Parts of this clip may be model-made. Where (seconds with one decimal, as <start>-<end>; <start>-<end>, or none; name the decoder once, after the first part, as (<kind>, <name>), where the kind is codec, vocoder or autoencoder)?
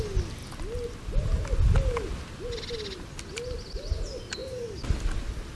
none